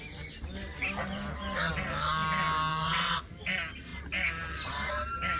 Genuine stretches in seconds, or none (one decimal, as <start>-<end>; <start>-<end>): 0.0-2.7; 3.3-5.4